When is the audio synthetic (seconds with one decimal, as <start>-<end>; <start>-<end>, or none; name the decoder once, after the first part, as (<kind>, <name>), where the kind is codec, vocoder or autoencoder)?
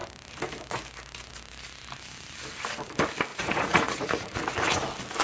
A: 3.3-4.4 (vocoder, Vocos)